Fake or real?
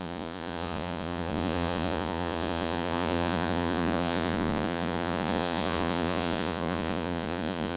fake